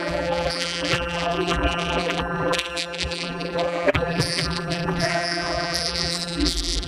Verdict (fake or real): fake